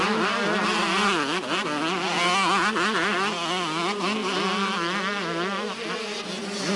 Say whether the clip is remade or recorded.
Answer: recorded